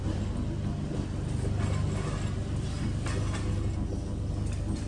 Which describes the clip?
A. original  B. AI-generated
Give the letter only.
A